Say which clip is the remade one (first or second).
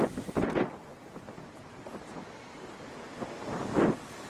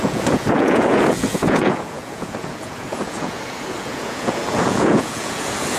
second